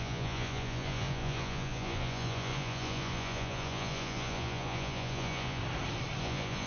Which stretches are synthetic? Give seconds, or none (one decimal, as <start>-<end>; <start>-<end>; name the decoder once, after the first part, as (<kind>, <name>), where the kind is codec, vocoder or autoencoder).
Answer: 0.0-5.6 (vocoder, Vocos); 6.2-6.7